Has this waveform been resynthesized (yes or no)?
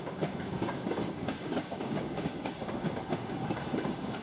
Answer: yes